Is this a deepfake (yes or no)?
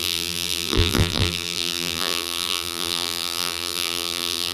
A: yes